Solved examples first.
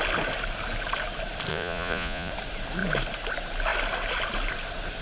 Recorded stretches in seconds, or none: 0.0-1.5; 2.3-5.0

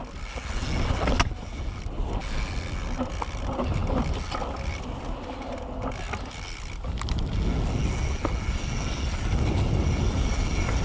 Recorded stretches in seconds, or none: 0.0-10.8

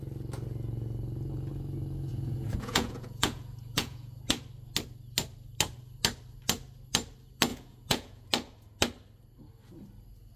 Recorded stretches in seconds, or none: 0.0-2.1; 4.2-7.5; 8.3-10.4

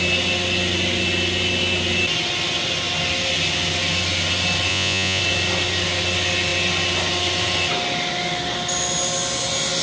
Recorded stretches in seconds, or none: 0.0-4.7; 5.2-9.8

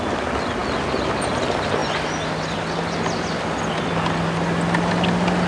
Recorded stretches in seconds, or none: 0.0-5.5

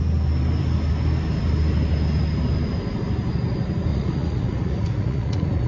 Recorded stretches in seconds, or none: 0.0-3.9

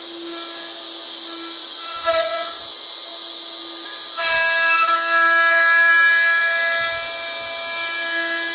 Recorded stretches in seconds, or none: 0.0-1.6; 2.6-8.5

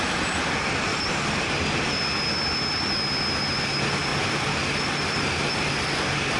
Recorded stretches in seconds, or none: 0.0-6.4